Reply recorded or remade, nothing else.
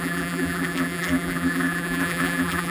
remade